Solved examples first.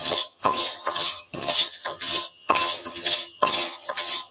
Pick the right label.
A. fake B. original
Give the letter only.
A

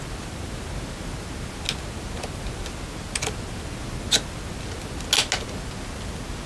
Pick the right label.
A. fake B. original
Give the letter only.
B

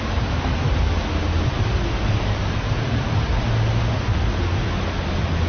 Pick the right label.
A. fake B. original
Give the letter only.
B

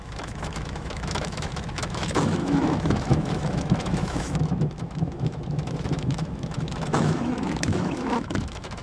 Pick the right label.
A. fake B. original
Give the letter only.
A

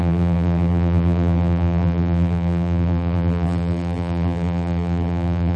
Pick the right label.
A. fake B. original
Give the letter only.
A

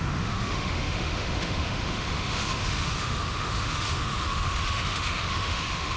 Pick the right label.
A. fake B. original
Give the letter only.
A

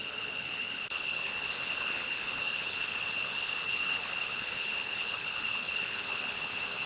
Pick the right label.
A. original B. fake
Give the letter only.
B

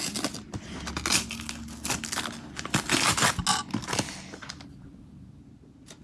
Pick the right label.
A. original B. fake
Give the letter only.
A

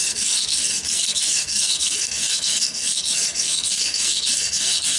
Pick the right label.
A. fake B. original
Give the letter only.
A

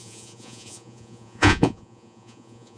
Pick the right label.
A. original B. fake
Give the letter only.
B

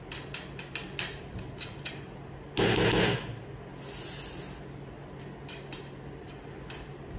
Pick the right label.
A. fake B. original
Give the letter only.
B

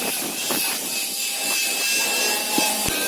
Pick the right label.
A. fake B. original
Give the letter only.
A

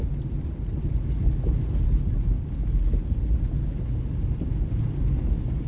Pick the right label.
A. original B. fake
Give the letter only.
A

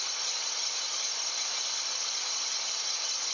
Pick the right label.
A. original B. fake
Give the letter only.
A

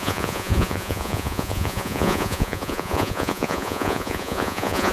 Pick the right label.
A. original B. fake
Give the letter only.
B